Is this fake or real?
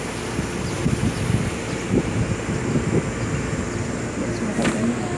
real